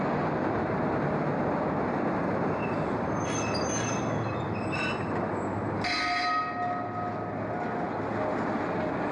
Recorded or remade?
recorded